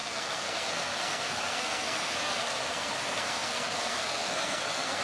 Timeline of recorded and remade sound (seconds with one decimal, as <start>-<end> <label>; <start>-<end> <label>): 0.0-5.0 remade